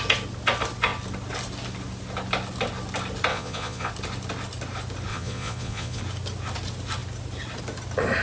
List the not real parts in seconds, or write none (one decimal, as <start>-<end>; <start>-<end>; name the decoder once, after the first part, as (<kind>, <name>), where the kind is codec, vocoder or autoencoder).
3.3-3.9 (vocoder, Vocos); 5.1-6.0